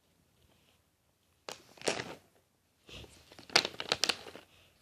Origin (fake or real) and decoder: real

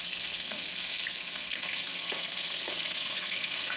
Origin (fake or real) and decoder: fake, codec, SNAC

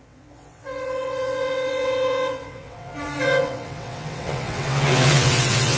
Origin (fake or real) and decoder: fake, vocoder, WaveNeXt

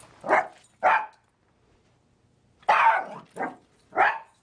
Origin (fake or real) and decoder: real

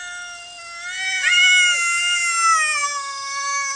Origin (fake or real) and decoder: real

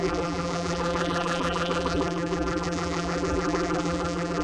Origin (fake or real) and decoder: fake, vocoder, BigVGAN v2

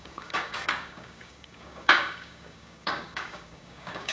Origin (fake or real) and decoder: fake, codec, DAC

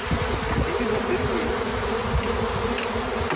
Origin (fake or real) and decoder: real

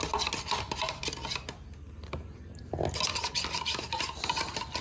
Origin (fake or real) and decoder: real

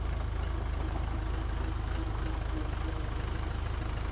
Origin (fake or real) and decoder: real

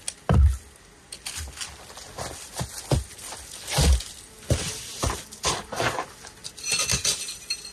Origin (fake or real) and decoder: real